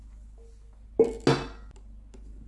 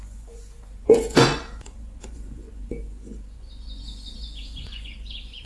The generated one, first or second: second